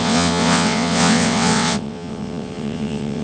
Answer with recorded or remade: remade